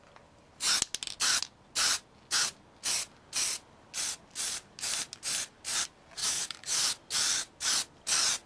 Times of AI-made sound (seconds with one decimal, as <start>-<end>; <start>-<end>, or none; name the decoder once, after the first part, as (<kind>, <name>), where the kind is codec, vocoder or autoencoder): 6.2-6.9 (codec, DAC)